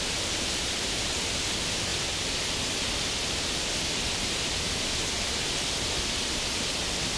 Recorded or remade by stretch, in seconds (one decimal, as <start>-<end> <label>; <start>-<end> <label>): 0.0-7.2 recorded